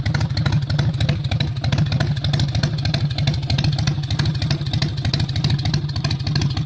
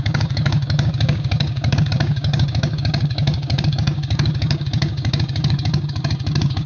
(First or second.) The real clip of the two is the first